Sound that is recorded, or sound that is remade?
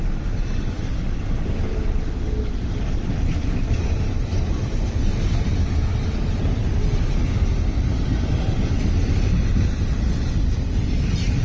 recorded